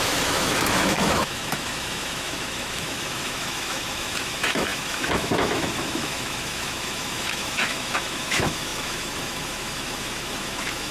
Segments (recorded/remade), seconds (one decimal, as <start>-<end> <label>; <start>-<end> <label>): 0.0-10.9 remade